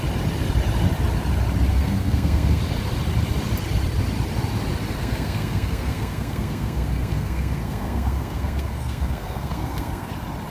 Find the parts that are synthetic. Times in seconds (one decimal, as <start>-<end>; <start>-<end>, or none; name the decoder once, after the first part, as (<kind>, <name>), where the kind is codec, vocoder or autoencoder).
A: 1.7-2.6 (codec, SNAC); 5.0-10.1